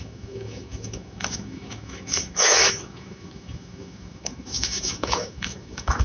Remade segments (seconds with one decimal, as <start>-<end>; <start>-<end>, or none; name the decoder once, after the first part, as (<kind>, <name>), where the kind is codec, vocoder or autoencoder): 0.0-6.0 (autoencoder, DAC-VAE)